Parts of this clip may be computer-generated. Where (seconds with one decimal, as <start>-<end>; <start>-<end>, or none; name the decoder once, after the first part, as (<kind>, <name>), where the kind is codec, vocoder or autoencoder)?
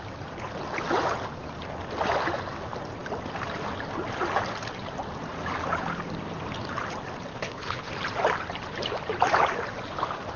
7.3-7.9 (codec, HILCodec)